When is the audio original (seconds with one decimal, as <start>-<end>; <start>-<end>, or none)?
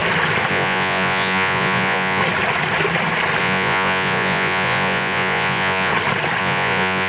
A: 0.0-0.5; 2.2-3.4; 5.9-6.4